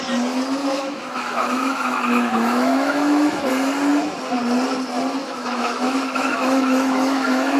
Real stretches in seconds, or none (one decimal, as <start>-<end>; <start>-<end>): 0.0-0.6; 3.5-5.2